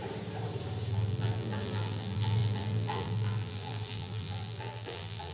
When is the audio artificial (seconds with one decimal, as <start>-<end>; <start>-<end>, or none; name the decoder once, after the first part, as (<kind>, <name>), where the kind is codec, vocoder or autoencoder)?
0.9-5.3 (vocoder, BigVGAN v2)

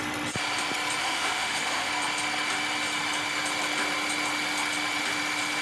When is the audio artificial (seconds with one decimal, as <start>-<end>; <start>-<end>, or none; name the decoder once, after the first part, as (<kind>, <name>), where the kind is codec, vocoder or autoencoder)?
1.0-1.9 (autoencoder, DAC-VAE)

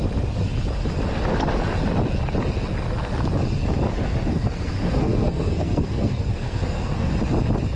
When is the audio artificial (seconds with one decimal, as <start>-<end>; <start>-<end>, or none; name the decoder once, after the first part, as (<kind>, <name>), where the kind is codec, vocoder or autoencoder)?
4.3-7.1 (codec, SNAC)

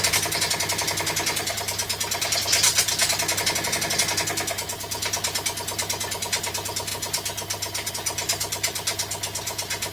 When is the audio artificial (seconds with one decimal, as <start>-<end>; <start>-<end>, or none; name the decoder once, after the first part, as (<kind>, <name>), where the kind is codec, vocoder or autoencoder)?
none